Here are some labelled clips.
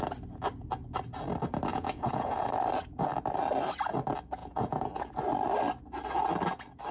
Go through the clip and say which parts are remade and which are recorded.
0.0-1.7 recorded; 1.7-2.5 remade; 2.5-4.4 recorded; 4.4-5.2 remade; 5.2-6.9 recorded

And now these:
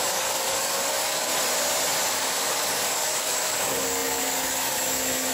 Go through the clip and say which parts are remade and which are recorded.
0.0-1.3 remade; 1.3-2.1 recorded; 2.1-5.3 remade

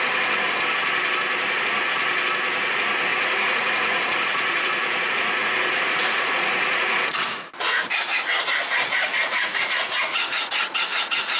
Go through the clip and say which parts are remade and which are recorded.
0.0-3.1 recorded; 3.1-7.5 remade; 7.5-9.2 recorded; 9.2-11.4 remade

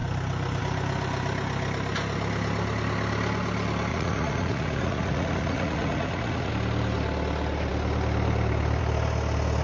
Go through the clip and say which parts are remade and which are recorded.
0.0-3.9 recorded; 3.9-6.5 remade; 6.5-9.6 recorded